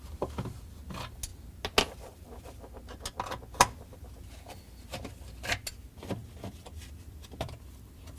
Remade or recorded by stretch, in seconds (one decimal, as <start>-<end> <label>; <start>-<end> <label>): 0.0-8.2 recorded